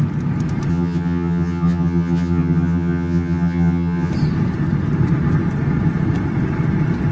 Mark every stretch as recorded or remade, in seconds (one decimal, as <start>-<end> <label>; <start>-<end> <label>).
0.0-0.7 recorded; 0.7-4.1 remade; 4.1-7.1 recorded